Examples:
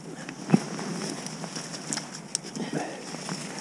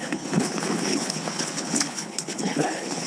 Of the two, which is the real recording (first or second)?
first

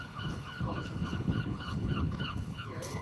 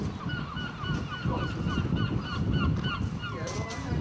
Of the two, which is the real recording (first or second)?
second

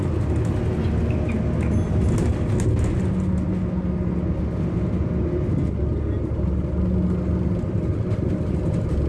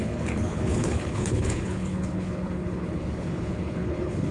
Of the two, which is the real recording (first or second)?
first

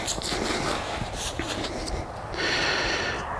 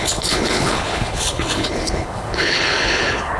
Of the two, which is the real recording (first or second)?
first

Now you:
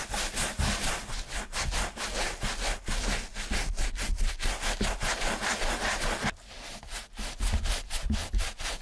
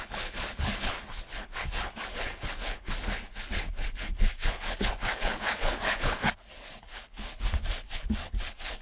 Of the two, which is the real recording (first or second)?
first